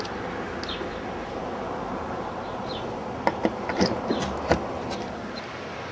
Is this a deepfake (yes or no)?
no